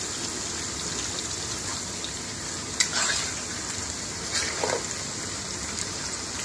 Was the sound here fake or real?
real